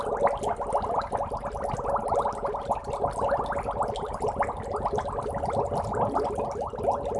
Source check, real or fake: real